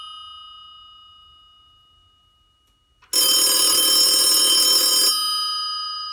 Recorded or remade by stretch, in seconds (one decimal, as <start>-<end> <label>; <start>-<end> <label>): 0.0-6.1 recorded